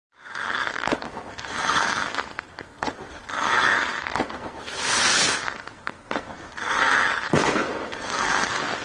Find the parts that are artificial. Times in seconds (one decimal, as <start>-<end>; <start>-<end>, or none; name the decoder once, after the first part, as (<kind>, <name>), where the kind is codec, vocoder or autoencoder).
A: 0.0-8.8 (codec, SNAC)